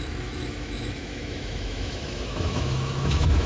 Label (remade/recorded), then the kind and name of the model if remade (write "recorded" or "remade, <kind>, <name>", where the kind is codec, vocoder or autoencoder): remade, autoencoder, DAC-VAE